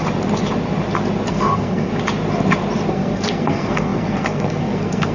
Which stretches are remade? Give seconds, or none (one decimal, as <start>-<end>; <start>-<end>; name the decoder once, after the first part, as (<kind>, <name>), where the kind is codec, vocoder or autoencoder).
1.3-1.9 (codec, SNAC); 2.9-5.1